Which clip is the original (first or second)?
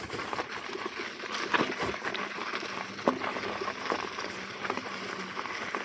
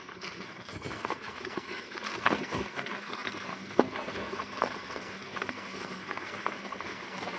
first